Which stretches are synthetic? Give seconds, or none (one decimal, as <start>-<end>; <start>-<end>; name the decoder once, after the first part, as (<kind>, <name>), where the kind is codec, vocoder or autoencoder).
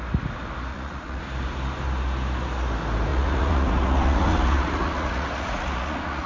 0.7-1.2 (vocoder, Vocos); 3.1-6.3